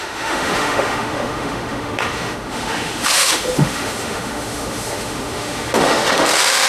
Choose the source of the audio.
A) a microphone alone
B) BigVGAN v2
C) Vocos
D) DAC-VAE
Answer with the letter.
D